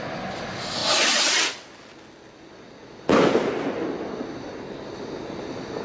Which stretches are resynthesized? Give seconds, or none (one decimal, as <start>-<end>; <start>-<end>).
none